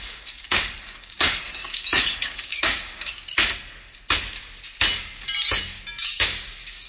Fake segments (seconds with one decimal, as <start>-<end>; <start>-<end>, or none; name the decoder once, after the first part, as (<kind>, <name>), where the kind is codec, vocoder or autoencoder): 0.0-3.3 (codec, DAC); 6.0-6.9